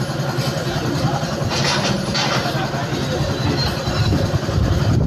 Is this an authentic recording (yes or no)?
no